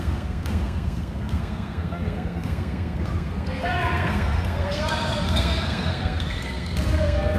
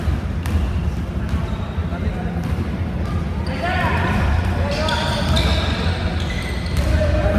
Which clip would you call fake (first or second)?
first